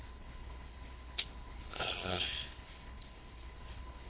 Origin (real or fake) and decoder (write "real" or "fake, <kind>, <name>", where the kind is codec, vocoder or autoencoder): fake, codec, HILCodec